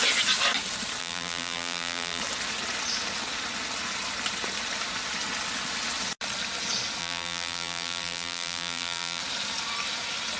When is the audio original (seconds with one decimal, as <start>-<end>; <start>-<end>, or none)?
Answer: 0.0-1.0; 2.2-7.0; 9.2-10.4